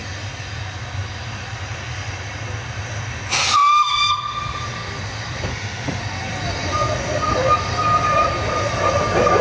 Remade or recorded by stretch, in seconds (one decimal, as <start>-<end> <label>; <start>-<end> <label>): 0.0-5.5 recorded; 5.5-6.0 remade; 6.0-9.4 recorded